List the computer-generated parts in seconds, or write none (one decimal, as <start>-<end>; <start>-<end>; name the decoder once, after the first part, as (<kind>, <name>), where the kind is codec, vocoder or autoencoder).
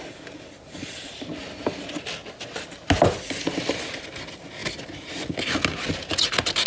none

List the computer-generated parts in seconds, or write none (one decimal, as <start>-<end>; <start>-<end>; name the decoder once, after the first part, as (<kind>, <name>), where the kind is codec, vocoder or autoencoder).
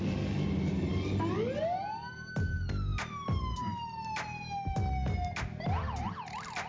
none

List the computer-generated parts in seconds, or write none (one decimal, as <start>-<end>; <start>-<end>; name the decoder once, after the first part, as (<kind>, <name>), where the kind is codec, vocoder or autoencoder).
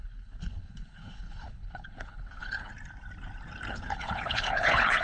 0.0-2.7 (codec, HILCodec); 3.7-5.0